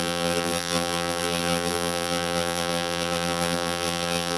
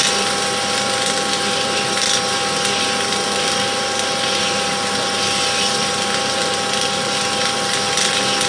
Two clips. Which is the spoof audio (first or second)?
first